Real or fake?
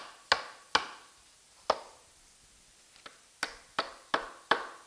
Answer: real